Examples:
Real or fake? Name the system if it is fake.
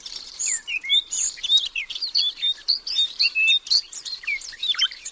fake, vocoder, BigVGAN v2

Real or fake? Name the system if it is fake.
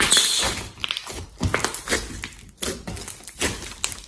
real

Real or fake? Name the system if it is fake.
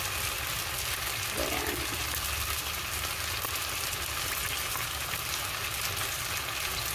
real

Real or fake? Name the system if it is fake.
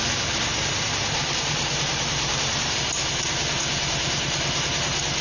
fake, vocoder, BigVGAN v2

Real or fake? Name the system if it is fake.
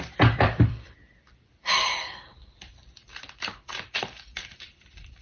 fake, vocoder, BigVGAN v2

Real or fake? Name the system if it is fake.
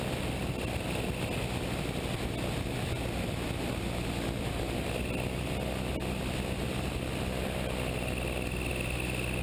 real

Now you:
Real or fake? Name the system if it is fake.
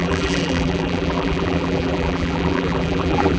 fake, vocoder, BigVGAN v2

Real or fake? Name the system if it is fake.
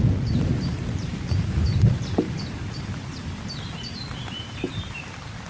fake, vocoder, BigVGAN v2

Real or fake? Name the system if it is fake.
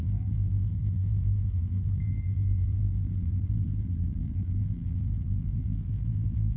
fake, vocoder, BigVGAN v2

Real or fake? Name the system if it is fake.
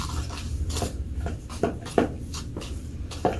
fake, vocoder, BigVGAN v2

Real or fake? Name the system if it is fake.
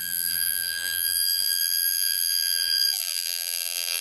fake, vocoder, BigVGAN v2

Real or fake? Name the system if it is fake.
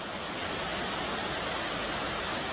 real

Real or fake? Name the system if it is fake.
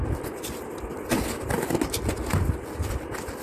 real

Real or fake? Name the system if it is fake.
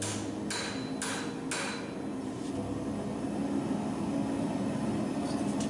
real